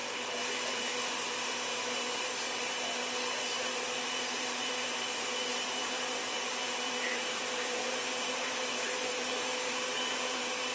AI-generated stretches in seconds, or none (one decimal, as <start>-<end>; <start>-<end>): 0.7-2.3; 3.5-10.7